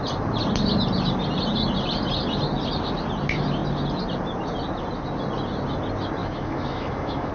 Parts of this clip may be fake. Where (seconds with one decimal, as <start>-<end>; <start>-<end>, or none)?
6.2-7.3